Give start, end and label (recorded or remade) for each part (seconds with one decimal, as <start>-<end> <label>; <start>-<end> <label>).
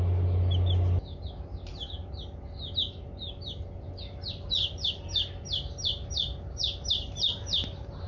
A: 0.0-8.1 recorded